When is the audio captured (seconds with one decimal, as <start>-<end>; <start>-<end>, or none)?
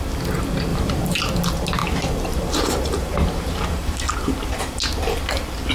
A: 0.0-0.7; 1.2-1.8; 4.6-5.7